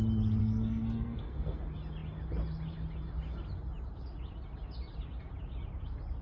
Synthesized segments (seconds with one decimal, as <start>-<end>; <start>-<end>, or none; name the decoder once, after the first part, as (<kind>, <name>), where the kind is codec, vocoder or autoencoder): 0.4-1.6 (codec, SNAC)